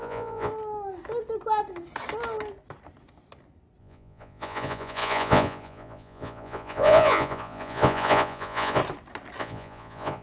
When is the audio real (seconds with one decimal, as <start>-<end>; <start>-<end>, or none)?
0.5-3.8; 8.8-9.4